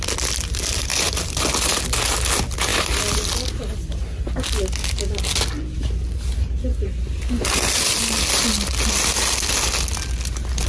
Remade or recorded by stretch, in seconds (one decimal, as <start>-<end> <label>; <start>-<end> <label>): 0.0-10.7 recorded